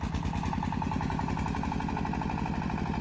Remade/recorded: recorded